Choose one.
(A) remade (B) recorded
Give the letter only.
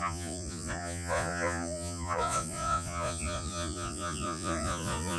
A